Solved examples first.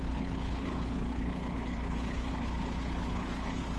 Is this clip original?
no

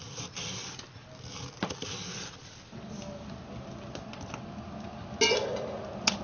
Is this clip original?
yes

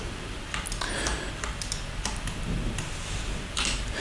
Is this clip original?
yes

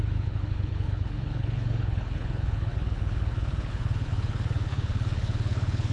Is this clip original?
no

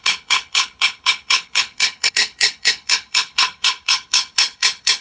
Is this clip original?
no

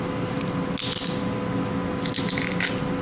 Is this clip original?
yes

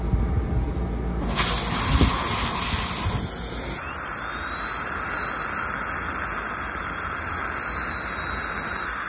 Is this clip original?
yes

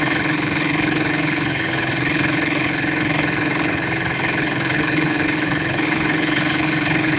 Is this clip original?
no